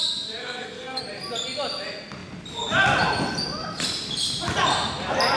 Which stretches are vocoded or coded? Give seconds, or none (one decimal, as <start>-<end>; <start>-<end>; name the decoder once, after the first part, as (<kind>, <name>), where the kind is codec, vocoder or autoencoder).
0.4-1.0 (codec, SNAC)